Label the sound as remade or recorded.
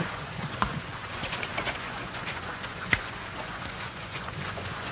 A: remade